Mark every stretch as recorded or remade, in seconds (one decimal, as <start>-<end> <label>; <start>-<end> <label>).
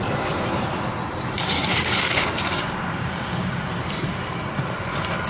0.0-1.6 recorded; 1.6-3.6 remade; 3.6-5.3 recorded